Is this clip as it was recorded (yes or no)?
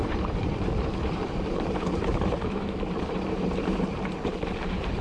no